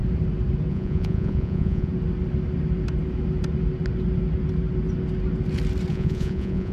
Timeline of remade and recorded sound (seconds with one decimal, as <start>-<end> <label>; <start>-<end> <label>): 0.0-0.7 recorded; 0.7-1.9 remade; 1.9-5.9 recorded; 5.9-6.7 remade